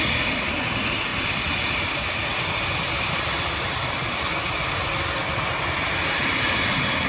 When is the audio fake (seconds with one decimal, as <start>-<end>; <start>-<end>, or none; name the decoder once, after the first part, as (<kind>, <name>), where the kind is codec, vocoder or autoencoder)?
1.1-5.4 (vocoder, BigVGAN v2)